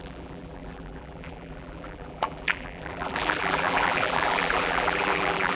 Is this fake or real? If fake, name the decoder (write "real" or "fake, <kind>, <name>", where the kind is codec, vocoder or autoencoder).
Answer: fake, vocoder, BigVGAN v2